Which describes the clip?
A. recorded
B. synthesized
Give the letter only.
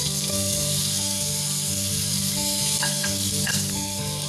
B